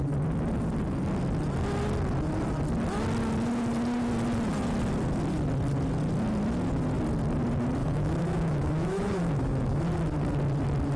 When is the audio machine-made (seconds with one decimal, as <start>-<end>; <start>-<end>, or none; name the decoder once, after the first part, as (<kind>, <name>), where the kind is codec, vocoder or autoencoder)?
7.8-9.8 (autoencoder, DAC-VAE)